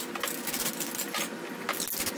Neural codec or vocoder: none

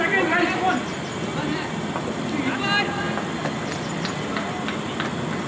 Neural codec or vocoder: none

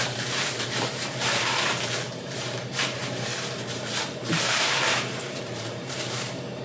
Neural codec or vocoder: vocoder, BigVGAN v2